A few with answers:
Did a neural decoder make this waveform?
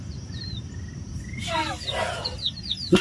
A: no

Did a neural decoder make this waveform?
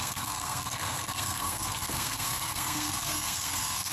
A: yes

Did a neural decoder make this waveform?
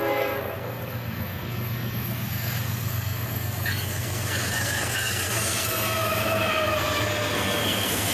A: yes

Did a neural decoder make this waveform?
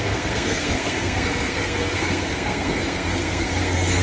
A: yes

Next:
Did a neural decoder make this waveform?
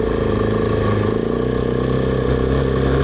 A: no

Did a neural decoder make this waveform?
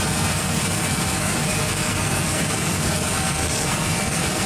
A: yes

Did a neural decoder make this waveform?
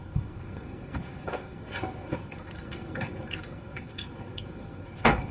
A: yes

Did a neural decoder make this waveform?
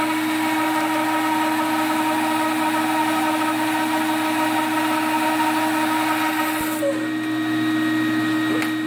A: no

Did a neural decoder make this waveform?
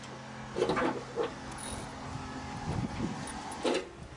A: no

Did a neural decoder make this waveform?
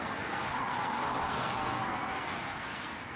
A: yes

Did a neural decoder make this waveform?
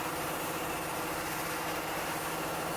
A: no